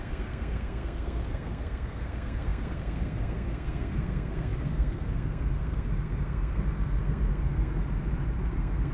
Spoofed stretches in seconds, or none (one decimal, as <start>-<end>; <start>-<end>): 0.0-7.8; 8.4-8.9